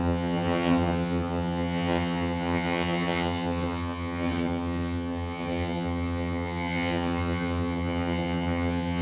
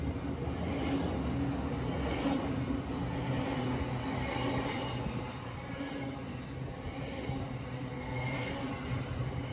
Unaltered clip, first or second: second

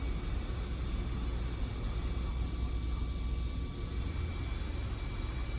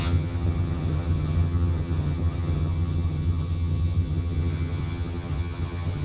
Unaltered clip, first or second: first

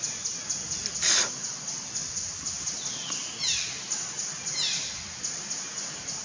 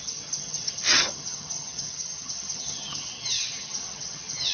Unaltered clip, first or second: first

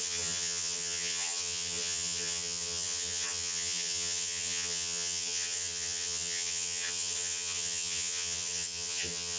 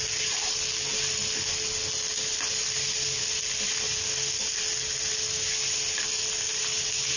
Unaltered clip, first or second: second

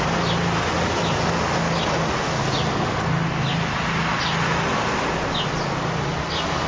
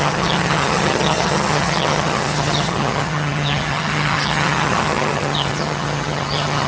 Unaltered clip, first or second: first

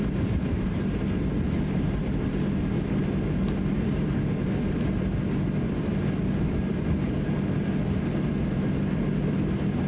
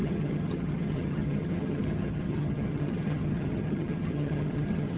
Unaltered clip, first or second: first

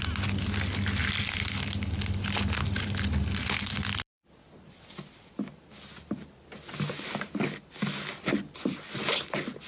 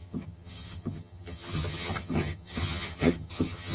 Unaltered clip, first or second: first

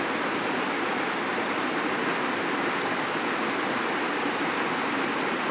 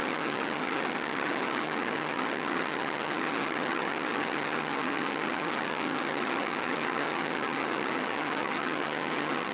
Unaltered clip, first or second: first